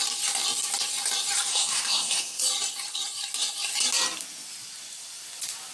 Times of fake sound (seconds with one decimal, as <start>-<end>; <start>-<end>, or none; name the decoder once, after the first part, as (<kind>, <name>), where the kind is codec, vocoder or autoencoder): 1.5-2.4 (codec, SNAC)